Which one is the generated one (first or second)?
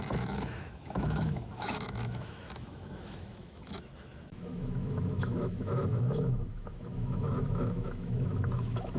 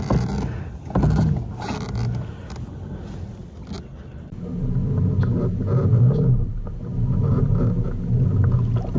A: first